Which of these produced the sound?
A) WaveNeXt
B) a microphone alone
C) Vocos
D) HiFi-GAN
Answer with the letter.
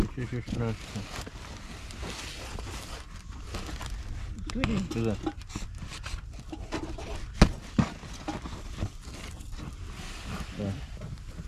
B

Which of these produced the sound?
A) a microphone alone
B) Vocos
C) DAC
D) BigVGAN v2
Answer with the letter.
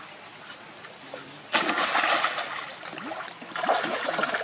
A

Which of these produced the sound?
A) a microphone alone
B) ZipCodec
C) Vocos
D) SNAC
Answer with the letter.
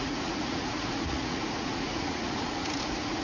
C